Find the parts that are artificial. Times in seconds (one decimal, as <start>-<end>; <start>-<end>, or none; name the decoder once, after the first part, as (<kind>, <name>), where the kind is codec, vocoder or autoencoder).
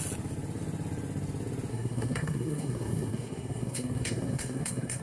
1.7-5.0 (codec, SNAC)